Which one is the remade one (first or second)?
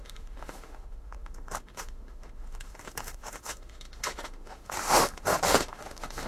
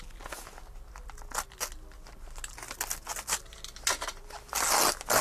first